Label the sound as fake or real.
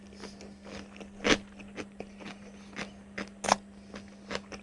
real